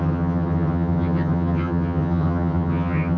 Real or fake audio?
fake